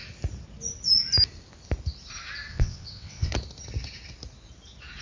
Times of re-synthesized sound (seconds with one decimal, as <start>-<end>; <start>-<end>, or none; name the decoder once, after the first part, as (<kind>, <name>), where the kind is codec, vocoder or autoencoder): 2.5-3.3 (vocoder, WaveNeXt)